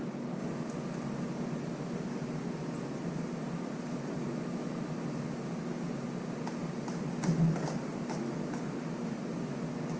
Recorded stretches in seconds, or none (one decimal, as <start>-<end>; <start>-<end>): 0.0-10.0